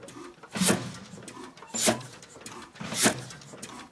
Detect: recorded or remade recorded